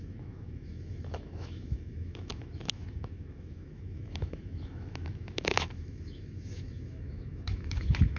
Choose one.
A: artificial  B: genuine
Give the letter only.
A